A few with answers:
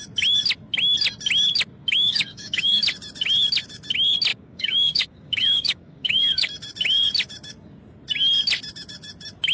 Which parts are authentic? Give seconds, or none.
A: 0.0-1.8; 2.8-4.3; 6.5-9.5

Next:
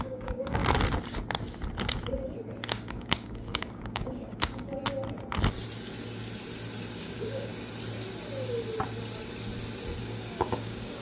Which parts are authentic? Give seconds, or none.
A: 0.6-2.7; 4.8-7.0; 7.5-10.0

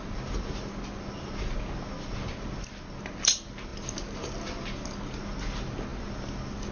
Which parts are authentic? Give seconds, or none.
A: 0.0-6.7

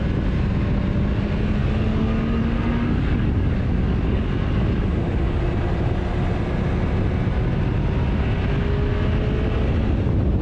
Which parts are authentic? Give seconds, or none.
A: 0.0-1.6; 5.4-10.4

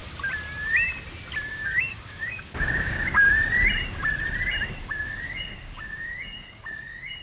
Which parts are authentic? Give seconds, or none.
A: 0.0-1.5; 3.2-4.8